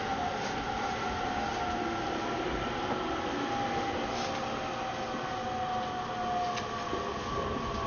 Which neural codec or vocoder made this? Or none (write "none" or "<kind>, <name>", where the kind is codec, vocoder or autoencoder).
none